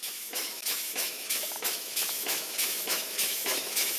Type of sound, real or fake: fake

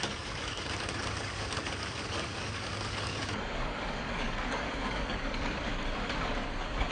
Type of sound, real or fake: fake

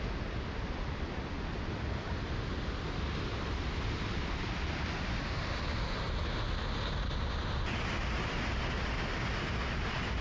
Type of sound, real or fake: real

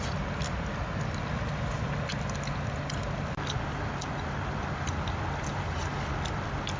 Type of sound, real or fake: real